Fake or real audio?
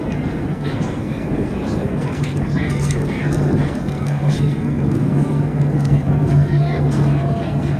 fake